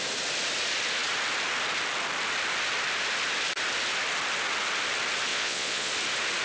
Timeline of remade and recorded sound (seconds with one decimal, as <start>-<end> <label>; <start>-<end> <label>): 0.0-5.3 recorded; 5.3-5.9 remade; 5.9-6.4 recorded